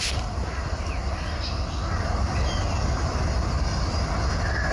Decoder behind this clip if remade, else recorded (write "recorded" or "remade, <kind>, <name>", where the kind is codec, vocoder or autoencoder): remade, vocoder, BigVGAN v2